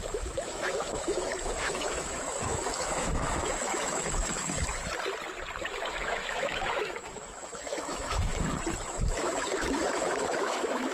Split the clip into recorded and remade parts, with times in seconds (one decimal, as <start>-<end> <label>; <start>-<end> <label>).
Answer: 0.0-4.7 remade; 4.7-5.6 recorded; 5.6-8.3 remade; 8.3-8.9 recorded; 8.9-10.9 remade